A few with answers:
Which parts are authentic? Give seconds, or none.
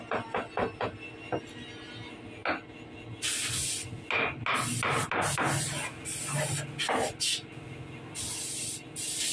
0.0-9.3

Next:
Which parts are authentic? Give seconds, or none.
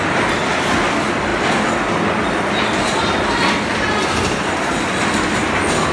0.0-5.9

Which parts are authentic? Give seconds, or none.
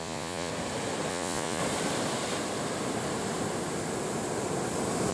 0.5-1.1; 1.6-5.1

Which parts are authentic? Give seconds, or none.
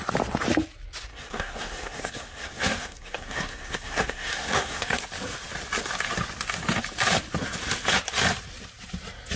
0.0-1.1; 5.0-9.4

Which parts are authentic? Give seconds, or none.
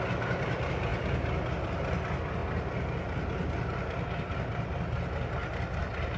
0.0-6.2